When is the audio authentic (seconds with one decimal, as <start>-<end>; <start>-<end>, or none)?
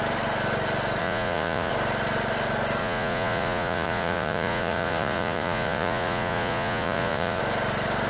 0.0-1.0; 1.7-2.8; 7.4-8.1